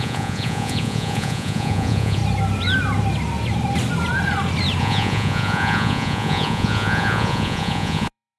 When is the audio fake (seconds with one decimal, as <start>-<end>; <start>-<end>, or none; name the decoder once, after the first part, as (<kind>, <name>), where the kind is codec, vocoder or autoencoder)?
0.0-2.2 (vocoder, Vocos); 4.8-8.4